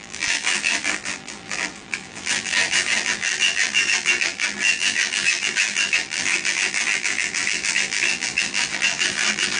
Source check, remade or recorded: remade